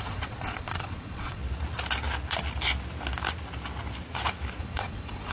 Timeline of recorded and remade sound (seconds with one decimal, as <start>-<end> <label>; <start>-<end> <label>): 0.0-1.4 remade; 1.4-4.6 recorded; 4.6-5.3 remade